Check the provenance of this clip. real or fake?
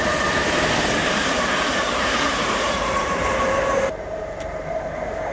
fake